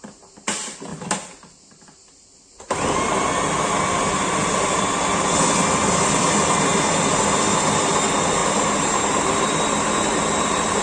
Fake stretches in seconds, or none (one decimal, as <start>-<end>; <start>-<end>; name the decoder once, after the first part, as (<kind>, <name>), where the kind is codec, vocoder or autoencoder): 8.4-10.8 (vocoder, BigVGAN v2)